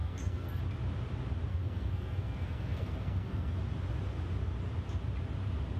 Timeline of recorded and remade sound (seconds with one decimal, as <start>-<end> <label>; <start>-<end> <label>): 0.0-0.6 remade; 0.6-1.5 recorded; 1.5-3.6 remade; 3.6-5.8 recorded